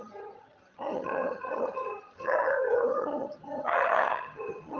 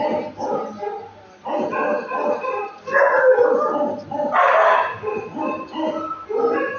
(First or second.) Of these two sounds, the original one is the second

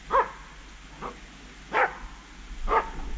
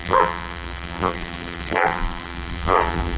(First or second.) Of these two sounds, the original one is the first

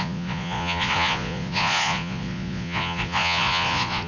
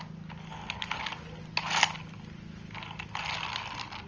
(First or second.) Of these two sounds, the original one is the second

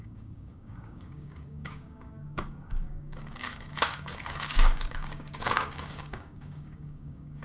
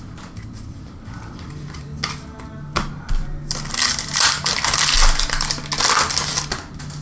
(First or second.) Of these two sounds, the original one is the second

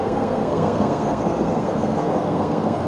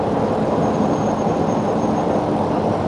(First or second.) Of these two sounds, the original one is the second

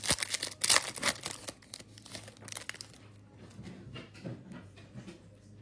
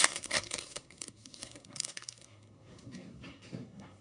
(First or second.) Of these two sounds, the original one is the first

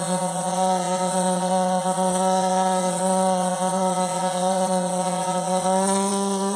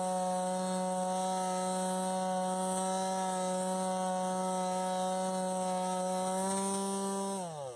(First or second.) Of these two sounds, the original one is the second